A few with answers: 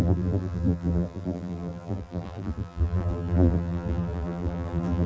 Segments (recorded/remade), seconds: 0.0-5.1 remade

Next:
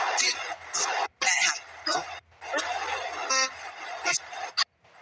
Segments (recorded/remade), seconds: 0.0-5.0 recorded

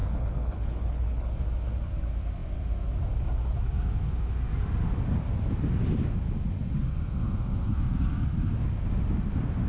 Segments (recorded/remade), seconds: 0.0-1.3 remade; 1.3-9.7 recorded

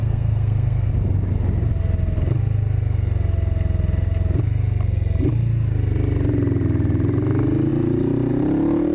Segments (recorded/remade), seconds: 0.0-0.9 remade; 0.9-8.9 recorded

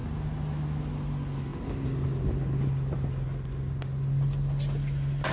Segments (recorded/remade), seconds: 0.0-5.3 recorded